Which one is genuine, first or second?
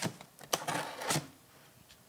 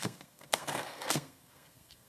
first